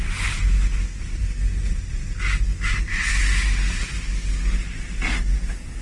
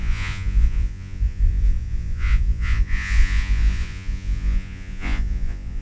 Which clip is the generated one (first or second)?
second